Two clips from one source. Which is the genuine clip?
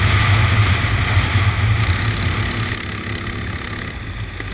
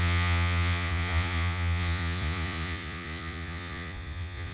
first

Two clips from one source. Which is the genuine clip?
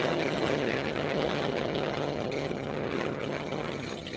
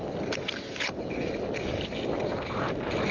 second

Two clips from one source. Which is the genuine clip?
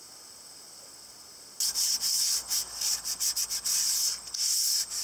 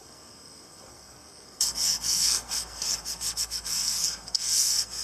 first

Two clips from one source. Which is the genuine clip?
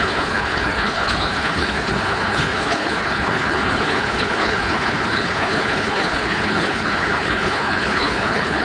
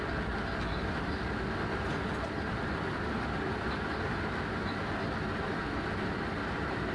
second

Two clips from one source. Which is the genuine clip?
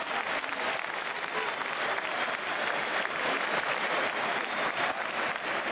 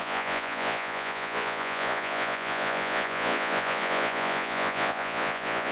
first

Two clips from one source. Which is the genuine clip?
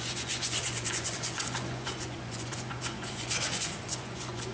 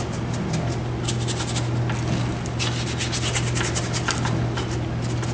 second